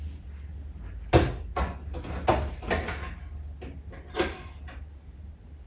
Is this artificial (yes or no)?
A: no